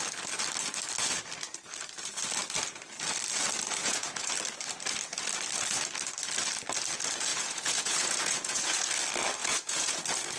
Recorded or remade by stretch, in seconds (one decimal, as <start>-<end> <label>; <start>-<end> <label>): 0.0-3.8 recorded; 3.8-4.3 remade; 4.3-7.3 recorded; 7.3-8.9 remade; 8.9-9.4 recorded; 9.4-10.0 remade; 10.0-10.4 recorded